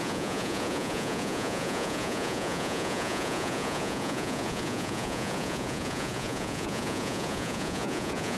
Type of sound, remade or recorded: remade